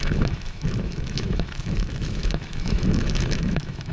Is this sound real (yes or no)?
no